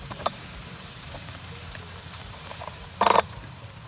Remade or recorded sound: remade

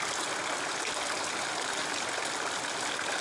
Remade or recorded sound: recorded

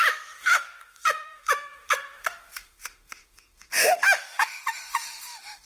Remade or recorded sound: remade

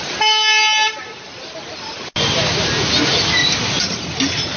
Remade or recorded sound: recorded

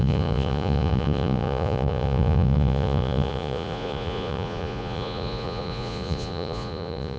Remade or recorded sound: remade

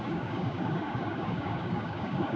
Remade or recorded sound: remade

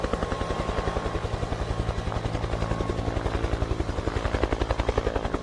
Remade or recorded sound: recorded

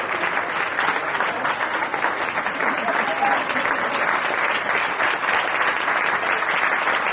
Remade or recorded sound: recorded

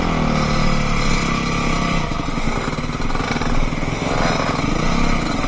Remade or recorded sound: recorded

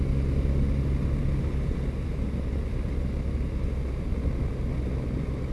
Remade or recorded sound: recorded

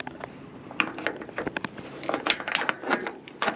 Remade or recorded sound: recorded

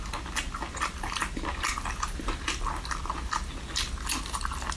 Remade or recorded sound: recorded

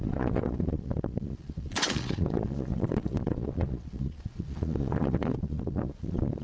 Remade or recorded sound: remade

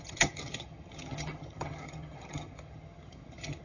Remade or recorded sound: remade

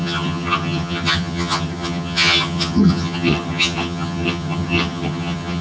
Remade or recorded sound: remade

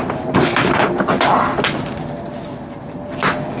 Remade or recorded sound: recorded